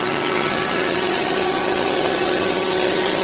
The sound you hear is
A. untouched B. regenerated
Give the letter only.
B